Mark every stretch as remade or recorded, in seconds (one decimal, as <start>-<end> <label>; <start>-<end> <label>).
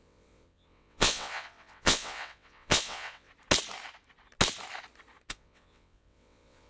0.0-3.3 remade; 3.3-5.3 recorded; 5.3-6.7 remade